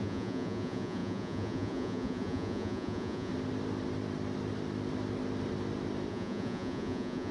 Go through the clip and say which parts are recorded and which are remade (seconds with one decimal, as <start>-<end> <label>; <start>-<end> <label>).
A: 0.0-3.3 remade; 3.3-6.1 recorded; 6.1-7.3 remade